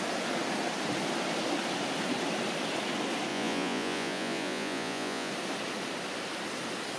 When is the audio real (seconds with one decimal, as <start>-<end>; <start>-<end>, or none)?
0.0-3.3; 5.3-7.0